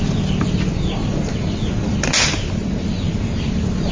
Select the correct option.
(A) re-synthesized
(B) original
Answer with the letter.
B